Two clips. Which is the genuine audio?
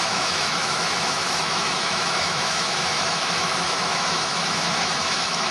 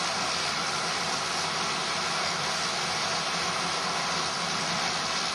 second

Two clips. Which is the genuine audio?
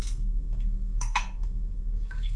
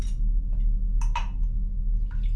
second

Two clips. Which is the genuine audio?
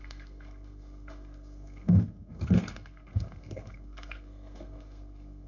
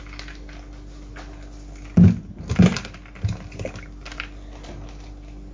second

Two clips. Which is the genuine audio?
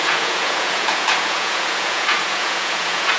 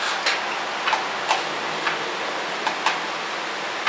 second